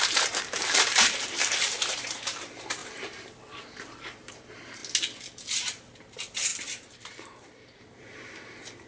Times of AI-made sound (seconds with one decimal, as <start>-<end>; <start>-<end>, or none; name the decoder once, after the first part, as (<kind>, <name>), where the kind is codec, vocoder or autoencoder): 0.0-4.8 (vocoder, BigVGAN v2); 5.4-8.9